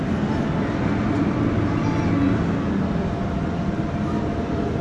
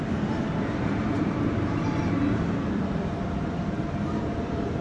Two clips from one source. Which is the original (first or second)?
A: first